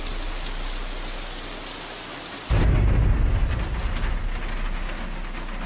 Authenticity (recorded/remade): recorded